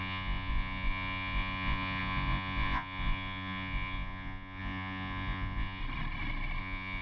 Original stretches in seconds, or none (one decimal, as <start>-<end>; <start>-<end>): 5.8-6.6